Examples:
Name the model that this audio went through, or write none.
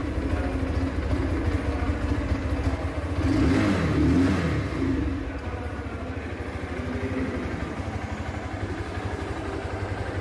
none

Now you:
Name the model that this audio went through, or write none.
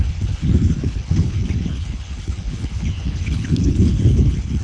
codec, HILCodec